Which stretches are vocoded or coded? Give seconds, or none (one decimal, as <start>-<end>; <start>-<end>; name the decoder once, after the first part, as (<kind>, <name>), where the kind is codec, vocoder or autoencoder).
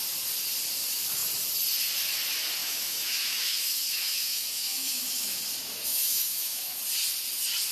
2.6-5.4 (autoencoder, DAC-VAE); 5.9-6.8